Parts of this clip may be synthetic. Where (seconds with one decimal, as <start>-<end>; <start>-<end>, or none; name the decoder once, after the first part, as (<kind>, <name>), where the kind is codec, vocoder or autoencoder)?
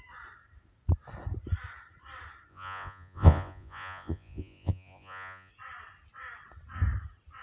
2.5-5.5 (vocoder, Vocos)